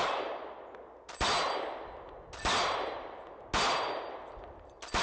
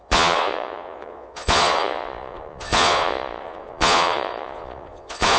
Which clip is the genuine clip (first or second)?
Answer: first